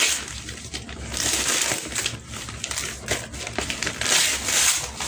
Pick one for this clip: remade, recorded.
recorded